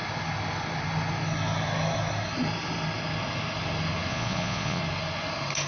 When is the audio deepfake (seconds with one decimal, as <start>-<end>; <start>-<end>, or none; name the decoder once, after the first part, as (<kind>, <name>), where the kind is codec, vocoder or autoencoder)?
4.1-4.8 (vocoder, Vocos)